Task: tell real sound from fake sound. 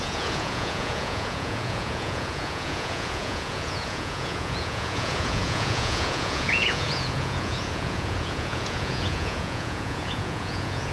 fake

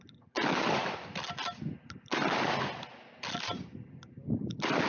real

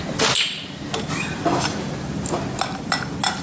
real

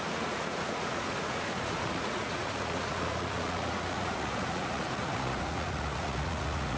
fake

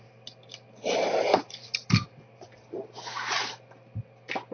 real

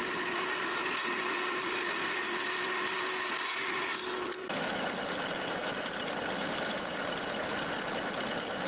real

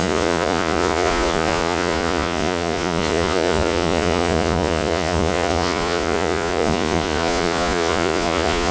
fake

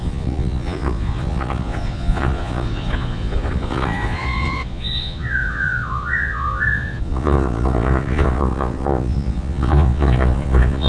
fake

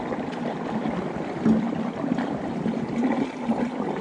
real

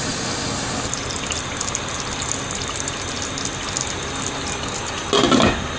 real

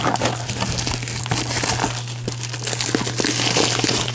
real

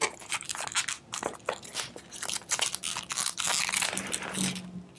real